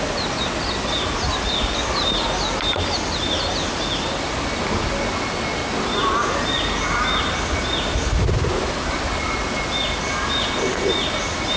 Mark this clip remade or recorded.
recorded